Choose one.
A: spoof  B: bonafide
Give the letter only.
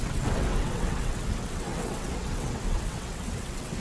A